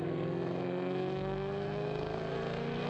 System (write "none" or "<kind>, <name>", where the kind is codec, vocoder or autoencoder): codec, SNAC